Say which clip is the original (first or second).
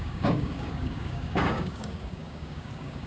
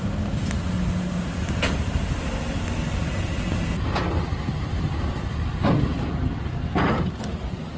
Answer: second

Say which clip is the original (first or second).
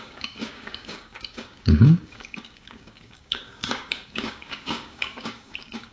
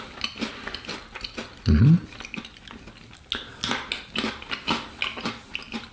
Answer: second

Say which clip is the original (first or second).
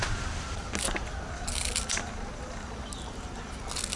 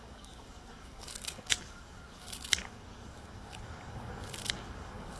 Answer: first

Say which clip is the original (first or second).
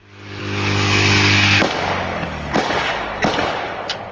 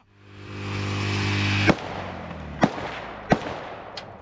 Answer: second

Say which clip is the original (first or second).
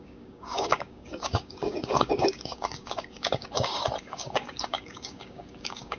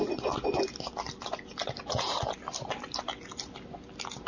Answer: second